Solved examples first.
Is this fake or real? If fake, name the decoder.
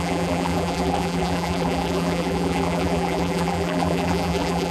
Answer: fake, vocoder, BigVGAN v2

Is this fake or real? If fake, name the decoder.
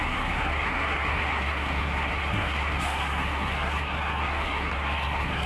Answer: fake, codec, SNAC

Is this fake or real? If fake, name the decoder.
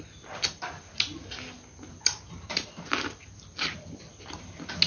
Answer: real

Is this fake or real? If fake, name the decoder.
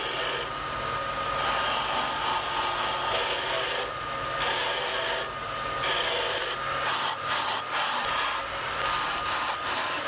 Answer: real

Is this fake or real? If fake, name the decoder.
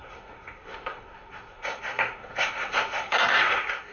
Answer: fake, codec, SNAC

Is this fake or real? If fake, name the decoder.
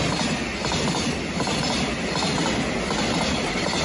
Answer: real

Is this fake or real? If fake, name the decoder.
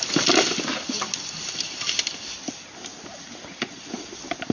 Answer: real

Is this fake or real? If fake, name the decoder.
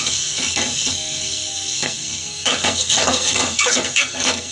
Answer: fake, codec, SNAC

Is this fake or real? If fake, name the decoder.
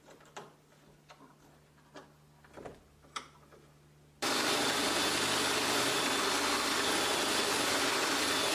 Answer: real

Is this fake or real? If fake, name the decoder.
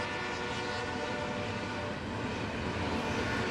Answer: real